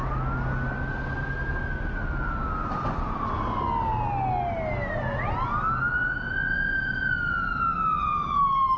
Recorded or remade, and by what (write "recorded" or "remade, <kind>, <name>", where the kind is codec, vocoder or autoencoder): recorded